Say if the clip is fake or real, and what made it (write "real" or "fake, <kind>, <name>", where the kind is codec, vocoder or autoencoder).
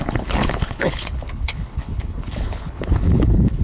fake, codec, HILCodec